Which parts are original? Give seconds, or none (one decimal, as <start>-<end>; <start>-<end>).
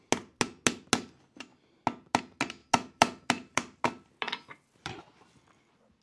0.0-2.6; 5.0-6.0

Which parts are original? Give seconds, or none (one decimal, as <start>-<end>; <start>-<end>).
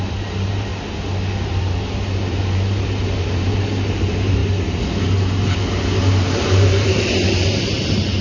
0.7-1.5; 4.4-6.3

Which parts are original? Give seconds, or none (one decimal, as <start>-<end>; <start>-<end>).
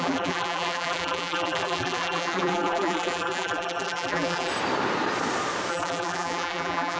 4.5-5.7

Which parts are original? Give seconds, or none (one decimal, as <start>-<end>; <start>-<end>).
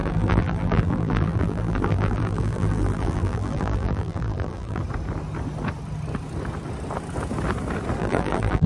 4.8-8.0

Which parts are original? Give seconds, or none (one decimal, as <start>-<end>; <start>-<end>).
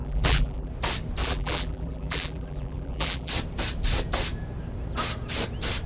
0.7-1.2; 3.3-5.9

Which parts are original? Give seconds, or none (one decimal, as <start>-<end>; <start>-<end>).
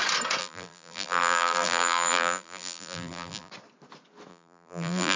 0.0-0.4; 3.5-4.3